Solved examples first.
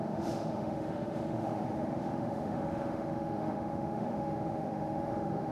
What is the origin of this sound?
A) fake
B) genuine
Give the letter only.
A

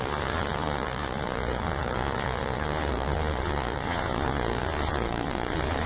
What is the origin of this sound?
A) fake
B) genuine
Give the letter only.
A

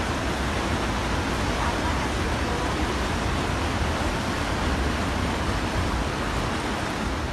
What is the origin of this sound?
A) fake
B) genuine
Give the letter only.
B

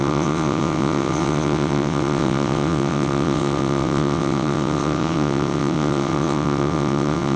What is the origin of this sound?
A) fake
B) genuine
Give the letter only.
A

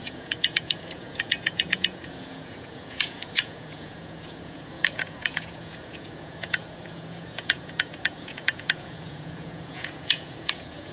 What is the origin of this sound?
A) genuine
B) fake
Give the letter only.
B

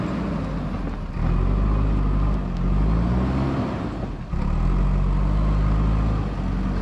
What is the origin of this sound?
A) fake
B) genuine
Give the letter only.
B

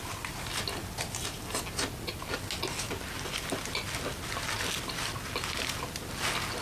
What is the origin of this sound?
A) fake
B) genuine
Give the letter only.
B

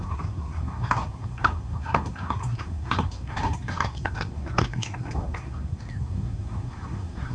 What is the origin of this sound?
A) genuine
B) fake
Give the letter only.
B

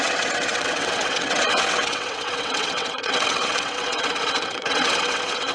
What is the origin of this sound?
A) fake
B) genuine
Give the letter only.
A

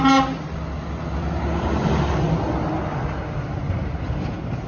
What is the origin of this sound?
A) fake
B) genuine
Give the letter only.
B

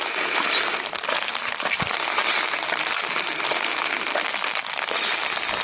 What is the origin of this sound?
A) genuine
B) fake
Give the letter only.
A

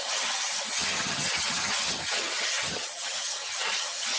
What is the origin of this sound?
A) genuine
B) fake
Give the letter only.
B